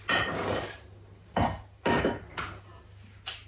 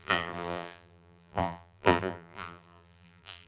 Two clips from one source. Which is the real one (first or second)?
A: first